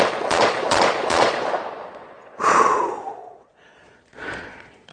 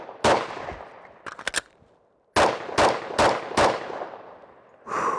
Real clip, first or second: second